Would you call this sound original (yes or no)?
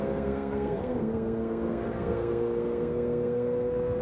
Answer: no